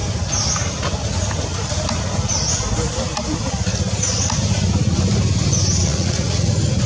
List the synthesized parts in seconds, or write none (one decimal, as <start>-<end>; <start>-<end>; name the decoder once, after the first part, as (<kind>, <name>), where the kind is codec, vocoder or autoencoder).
5.8-6.5 (vocoder, Vocos)